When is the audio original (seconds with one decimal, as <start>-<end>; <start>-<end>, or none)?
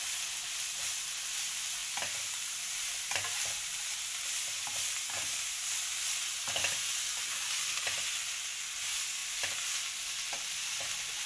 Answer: 0.0-11.3